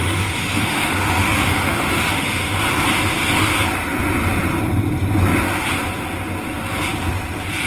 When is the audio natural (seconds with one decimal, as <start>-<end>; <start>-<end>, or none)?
2.6-7.7